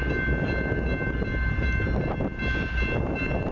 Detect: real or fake real